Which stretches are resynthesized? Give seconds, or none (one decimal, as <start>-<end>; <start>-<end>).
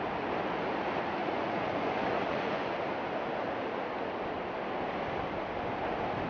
1.2-2.7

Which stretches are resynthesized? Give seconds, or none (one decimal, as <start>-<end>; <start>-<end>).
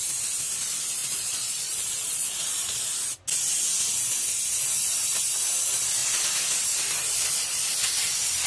1.0-2.8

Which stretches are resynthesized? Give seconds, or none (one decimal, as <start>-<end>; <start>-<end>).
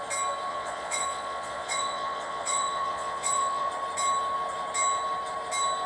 0.5-3.7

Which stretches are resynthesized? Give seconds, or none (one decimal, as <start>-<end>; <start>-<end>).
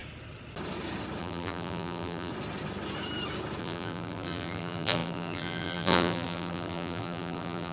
1.2-2.3; 3.6-7.7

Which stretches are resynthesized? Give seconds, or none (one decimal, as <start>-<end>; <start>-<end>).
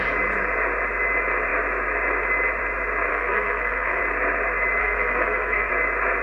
3.1-4.0; 4.8-5.7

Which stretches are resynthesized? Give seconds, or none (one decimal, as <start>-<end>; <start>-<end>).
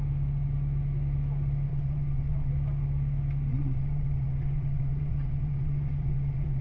1.7-2.5; 3.5-6.6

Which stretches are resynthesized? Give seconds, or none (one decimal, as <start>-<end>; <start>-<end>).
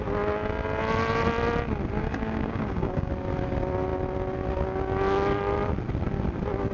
2.0-3.1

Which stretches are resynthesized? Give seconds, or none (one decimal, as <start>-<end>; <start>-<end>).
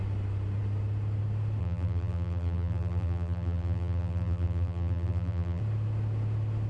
1.6-5.6